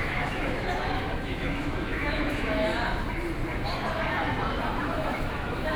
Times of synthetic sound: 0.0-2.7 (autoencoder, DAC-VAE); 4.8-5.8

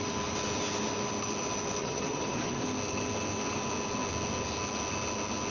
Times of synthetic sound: 1.8-2.6 (vocoder, HiFi-GAN)

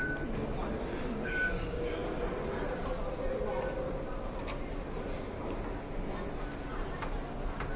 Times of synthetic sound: none